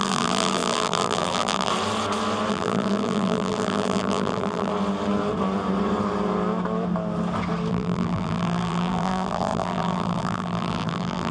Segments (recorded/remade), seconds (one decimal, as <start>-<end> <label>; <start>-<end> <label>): 0.0-1.7 remade; 1.7-2.5 recorded; 2.5-4.7 remade; 4.7-7.7 recorded; 7.7-11.3 remade